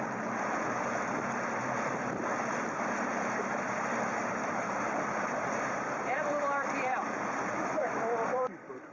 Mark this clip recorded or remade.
remade